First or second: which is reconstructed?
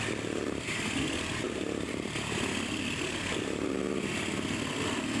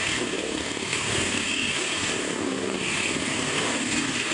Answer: second